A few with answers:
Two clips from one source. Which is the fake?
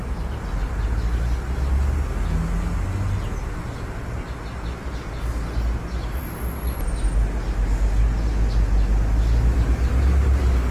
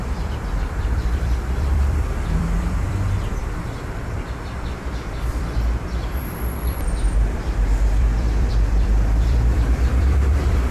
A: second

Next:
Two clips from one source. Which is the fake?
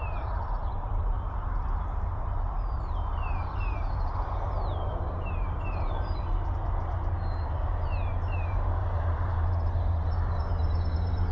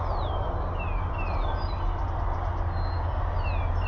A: first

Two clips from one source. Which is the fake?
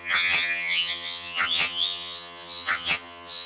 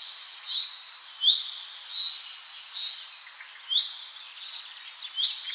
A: first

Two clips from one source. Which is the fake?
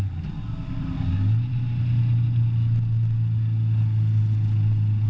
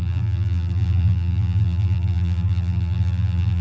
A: second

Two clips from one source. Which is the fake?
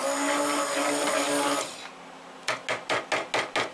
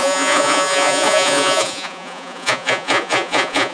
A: second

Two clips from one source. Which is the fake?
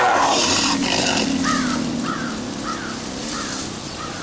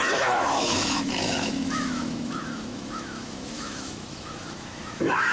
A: second